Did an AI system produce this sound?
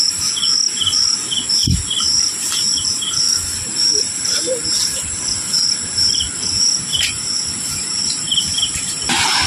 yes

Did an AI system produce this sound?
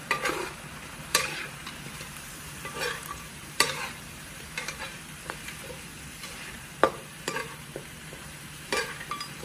yes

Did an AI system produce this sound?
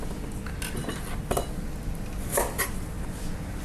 no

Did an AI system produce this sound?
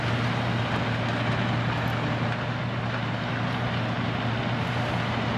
no